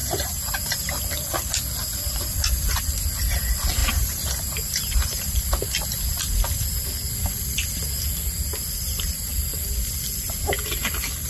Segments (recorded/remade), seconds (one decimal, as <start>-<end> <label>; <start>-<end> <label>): 0.0-1.0 remade; 1.0-3.8 recorded; 3.8-5.4 remade; 5.4-11.3 recorded